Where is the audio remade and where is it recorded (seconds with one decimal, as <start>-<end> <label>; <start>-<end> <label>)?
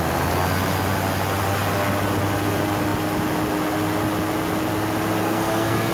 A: 0.0-5.2 recorded; 5.2-5.9 remade